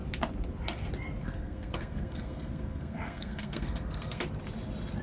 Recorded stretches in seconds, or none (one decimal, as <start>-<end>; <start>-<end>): 0.0-1.2; 4.2-5.0